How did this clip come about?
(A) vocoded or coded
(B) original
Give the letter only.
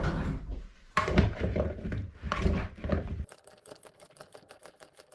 A